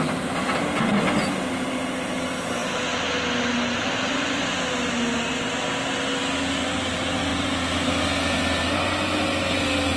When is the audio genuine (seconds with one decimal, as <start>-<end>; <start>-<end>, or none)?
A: 0.0-10.0